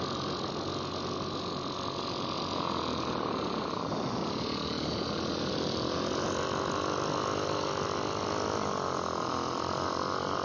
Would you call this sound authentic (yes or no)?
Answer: yes